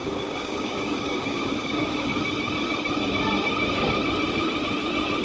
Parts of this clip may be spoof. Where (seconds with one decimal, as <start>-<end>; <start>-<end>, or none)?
0.0-2.1